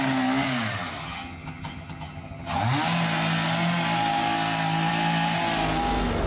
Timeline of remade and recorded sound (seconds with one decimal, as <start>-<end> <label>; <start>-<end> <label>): 0.0-1.0 recorded; 1.0-2.6 remade; 2.6-6.3 recorded